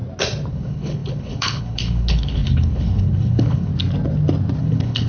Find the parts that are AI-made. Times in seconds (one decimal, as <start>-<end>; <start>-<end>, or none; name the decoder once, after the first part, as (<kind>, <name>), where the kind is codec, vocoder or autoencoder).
0.5-3.7 (codec, HILCodec); 4.6-5.1